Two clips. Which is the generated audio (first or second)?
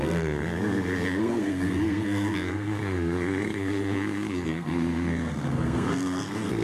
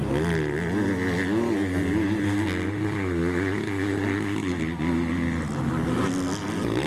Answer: first